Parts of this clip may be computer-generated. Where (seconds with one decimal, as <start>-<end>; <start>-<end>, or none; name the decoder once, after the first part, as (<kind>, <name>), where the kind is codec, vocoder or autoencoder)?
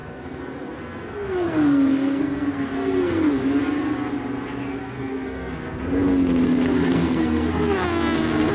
0.0-3.4 (codec, SNAC); 4.8-5.8; 6.8-8.5